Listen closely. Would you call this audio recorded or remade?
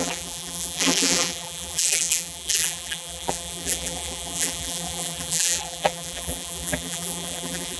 remade